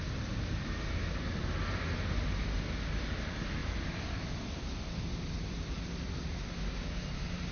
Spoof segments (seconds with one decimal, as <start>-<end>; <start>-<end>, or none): 3.6-4.6